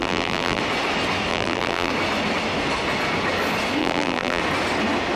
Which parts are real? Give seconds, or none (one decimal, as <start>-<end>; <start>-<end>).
0.6-1.3; 1.9-3.8; 4.4-5.2